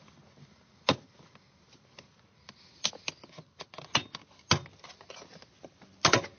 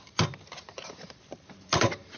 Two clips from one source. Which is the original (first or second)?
first